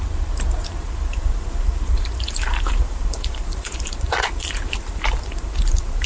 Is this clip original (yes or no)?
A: no